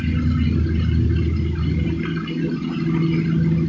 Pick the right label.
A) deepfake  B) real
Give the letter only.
B